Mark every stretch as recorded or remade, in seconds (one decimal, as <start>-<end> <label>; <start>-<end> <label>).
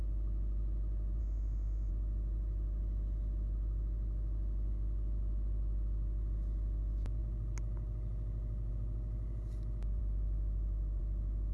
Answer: 0.0-1.2 recorded; 1.2-1.9 remade; 1.9-11.5 recorded